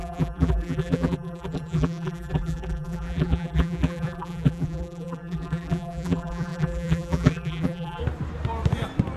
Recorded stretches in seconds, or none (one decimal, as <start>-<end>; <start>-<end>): 8.0-9.2